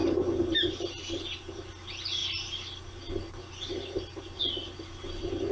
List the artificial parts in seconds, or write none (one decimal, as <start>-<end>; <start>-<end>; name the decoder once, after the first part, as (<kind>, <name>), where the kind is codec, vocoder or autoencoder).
none